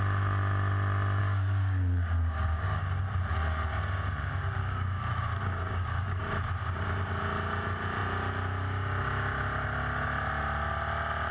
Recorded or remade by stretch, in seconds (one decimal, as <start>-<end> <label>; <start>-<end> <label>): 0.0-1.2 recorded; 1.2-2.8 remade; 2.8-4.6 recorded; 4.6-6.2 remade; 6.2-11.3 recorded